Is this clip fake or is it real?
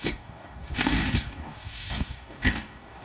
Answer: fake